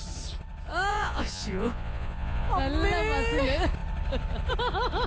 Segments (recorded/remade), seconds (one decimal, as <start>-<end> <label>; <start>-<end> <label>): 0.0-0.9 recorded; 0.9-2.5 remade; 2.5-5.1 recorded